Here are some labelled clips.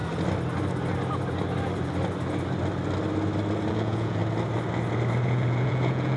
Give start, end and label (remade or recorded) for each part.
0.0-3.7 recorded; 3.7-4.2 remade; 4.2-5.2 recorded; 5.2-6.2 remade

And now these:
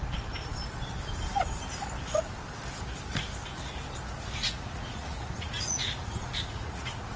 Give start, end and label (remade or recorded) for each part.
0.0-4.4 recorded; 4.4-7.2 remade

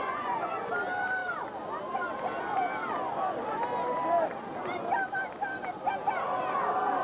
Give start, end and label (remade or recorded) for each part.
0.0-0.7 remade; 0.7-7.0 recorded

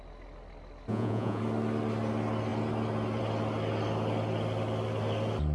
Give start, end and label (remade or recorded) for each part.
0.0-0.9 recorded; 0.9-1.4 remade; 1.4-5.5 recorded

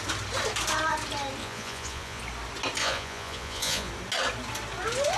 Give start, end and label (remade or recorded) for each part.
0.0-1.4 recorded; 1.4-2.2 remade; 2.2-2.8 recorded; 2.8-3.9 remade; 3.9-5.2 recorded

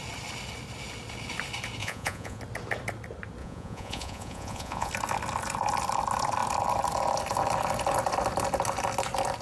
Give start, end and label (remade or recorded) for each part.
0.0-1.8 recorded; 1.8-2.4 remade; 2.4-3.4 recorded; 3.4-4.9 remade; 4.9-9.4 recorded